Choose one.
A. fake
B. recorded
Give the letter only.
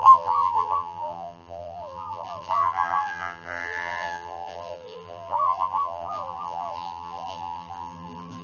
A